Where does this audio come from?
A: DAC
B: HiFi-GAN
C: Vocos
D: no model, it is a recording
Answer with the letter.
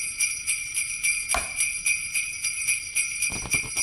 D